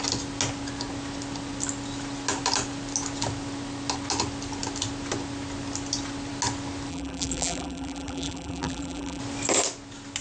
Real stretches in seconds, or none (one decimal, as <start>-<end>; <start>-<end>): 0.0-6.9; 9.2-10.2